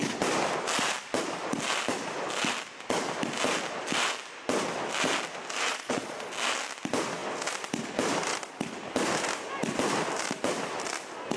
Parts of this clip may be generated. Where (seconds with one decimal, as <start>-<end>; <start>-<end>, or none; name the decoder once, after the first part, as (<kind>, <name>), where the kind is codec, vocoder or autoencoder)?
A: 5.7-6.3 (vocoder, Vocos)